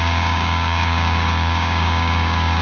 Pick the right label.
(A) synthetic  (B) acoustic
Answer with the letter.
A